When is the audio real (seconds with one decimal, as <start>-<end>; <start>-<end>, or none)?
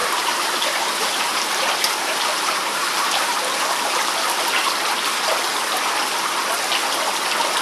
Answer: 4.4-7.6